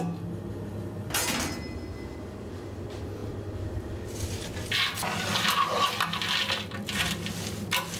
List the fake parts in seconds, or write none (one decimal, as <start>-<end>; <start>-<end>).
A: none